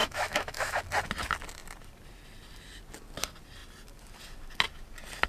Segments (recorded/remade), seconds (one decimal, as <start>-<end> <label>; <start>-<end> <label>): 0.0-0.8 remade; 0.8-5.3 recorded